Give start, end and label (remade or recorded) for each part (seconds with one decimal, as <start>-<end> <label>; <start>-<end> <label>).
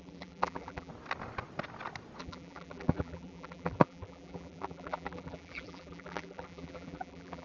0.0-0.9 remade; 0.9-2.2 recorded; 2.2-7.4 remade